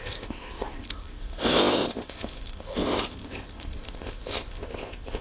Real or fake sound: fake